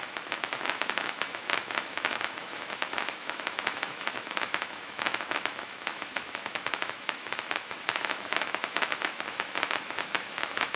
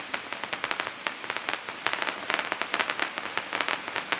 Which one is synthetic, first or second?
first